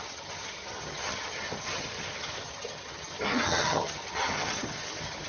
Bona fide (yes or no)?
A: no